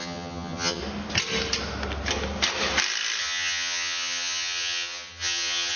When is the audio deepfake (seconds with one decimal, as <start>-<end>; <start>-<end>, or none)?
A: 0.0-0.8; 3.2-5.8

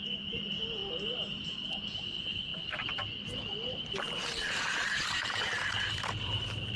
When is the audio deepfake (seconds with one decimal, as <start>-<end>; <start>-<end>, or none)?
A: 0.8-1.5; 2.5-6.8